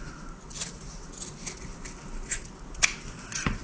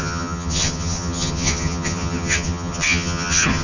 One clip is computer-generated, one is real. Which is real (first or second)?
first